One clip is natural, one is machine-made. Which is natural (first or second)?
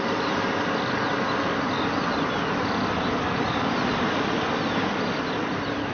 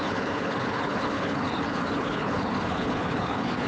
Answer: first